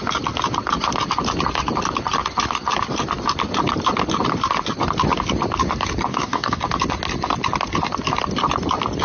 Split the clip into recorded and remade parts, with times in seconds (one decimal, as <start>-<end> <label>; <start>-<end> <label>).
0.0-6.1 recorded; 6.1-6.6 remade; 6.6-9.0 recorded